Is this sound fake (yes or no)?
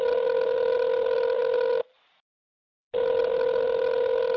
no